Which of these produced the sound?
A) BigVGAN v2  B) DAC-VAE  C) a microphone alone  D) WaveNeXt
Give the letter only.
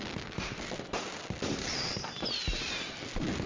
C